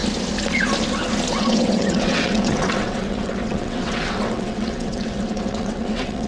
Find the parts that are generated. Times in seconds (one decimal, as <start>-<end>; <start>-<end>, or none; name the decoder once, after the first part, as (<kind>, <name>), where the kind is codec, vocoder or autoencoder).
1.3-6.3 (vocoder, WaveNeXt)